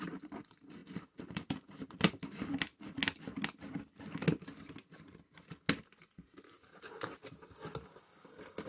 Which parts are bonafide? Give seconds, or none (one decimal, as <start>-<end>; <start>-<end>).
0.0-0.8; 2.0-8.7